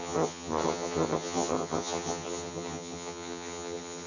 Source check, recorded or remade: remade